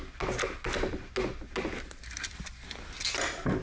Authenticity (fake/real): real